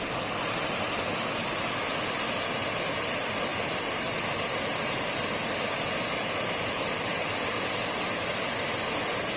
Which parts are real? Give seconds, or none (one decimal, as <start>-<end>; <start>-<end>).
0.0-9.4